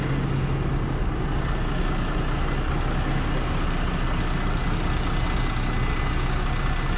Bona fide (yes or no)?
yes